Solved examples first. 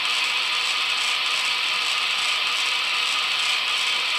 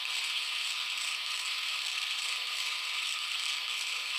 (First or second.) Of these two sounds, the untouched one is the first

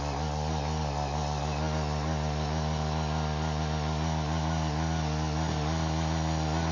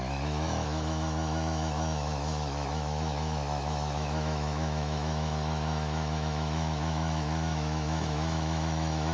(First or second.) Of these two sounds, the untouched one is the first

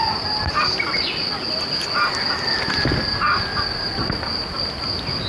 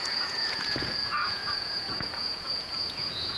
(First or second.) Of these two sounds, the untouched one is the first